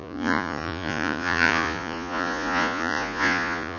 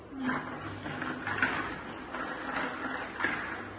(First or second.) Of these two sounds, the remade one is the first